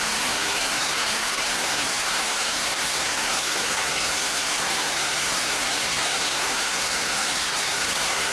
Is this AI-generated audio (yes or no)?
yes